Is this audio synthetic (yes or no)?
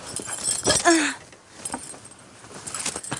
no